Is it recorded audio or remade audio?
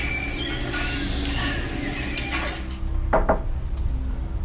recorded